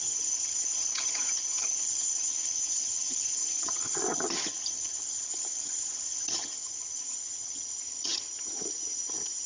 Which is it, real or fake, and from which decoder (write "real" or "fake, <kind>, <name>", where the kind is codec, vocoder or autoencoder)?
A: fake, vocoder, HiFi-GAN